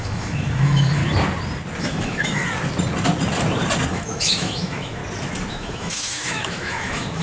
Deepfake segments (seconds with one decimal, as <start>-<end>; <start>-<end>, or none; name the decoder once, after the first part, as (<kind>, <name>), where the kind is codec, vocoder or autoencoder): 0.0-1.0 (autoencoder, DAC-VAE); 1.8-2.4; 3.9-5.0; 5.5-7.2